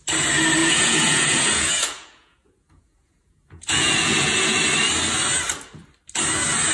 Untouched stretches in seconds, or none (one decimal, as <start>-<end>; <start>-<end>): 0.0-0.6; 4.6-6.7